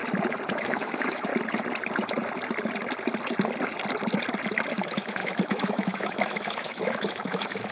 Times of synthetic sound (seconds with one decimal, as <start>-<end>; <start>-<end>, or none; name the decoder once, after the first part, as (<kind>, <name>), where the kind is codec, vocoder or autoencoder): 0.5-1.3 (autoencoder, DAC-VAE); 4.7-7.7